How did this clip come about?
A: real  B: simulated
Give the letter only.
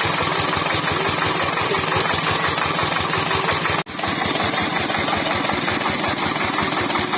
A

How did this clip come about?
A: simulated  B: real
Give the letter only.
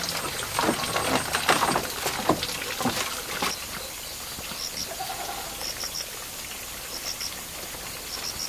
B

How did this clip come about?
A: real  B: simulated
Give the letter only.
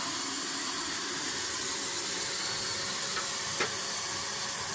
A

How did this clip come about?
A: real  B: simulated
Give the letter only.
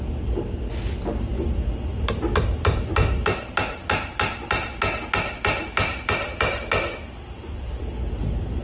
A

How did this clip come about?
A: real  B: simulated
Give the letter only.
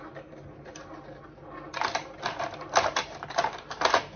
A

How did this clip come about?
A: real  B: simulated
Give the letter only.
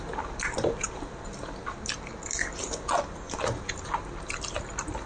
A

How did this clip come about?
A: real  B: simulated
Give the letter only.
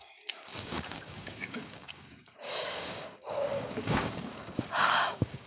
B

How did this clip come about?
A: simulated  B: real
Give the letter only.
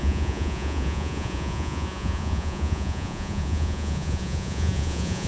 A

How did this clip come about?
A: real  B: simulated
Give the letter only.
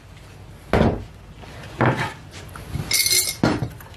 A